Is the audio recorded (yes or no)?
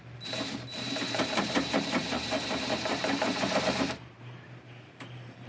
no